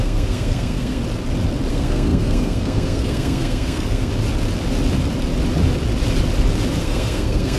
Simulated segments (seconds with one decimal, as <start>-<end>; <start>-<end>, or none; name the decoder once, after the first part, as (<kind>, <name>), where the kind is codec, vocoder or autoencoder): 0.0-1.0 (codec, SNAC); 1.7-4.1; 6.8-7.6